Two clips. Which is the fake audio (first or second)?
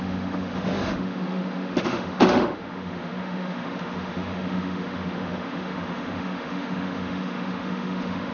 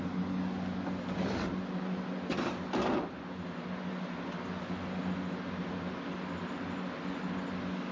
first